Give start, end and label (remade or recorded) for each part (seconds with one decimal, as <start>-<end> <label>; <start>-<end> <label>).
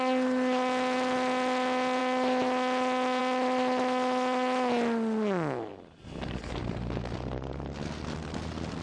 0.0-8.8 recorded